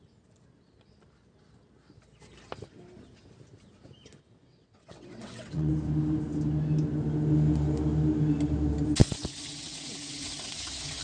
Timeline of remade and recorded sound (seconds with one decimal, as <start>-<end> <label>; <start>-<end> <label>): 0.0-4.4 recorded; 4.4-5.7 remade; 5.7-9.0 recorded; 9.0-11.0 remade